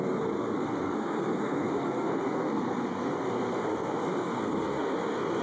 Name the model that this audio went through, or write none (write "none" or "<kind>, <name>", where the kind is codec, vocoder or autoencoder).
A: codec, SNAC